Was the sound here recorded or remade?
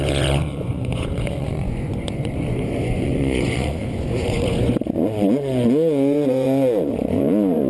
remade